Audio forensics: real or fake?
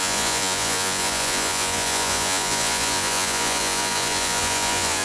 fake